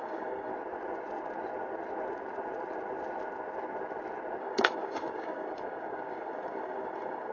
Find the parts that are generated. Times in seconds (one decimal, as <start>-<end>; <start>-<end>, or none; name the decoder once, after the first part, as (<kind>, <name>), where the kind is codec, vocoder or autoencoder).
0.0-0.5 (codec, DAC); 4.4-7.3